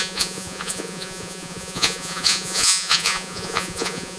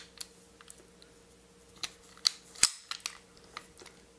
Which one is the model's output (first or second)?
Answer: first